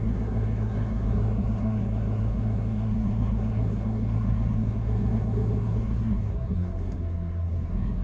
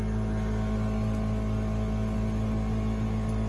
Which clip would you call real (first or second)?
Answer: second